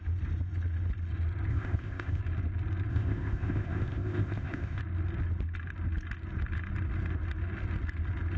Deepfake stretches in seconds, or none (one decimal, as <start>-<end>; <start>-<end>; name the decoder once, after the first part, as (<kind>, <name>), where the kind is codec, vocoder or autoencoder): 1.5-2.2 (codec, ZipCodec); 2.9-4.8